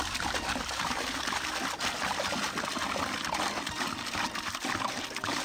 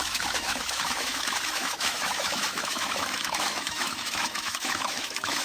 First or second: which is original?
first